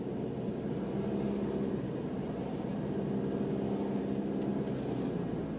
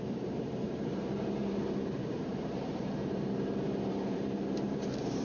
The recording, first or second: first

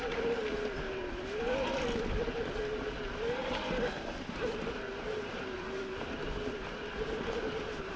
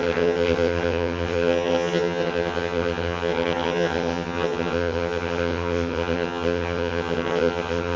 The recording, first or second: first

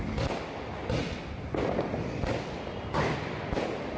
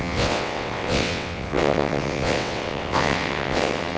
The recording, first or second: first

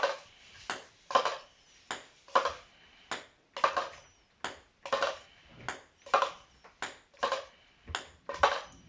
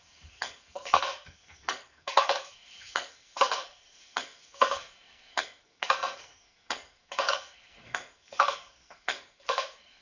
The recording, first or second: first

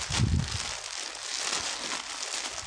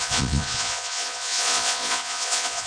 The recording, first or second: first